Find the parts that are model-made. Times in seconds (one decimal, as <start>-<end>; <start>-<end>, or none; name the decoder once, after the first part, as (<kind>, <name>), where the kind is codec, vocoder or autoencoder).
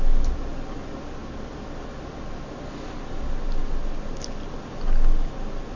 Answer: none